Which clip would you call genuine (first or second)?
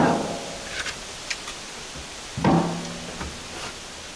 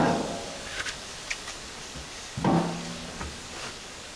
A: first